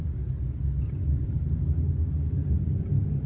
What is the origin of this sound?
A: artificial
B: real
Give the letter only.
B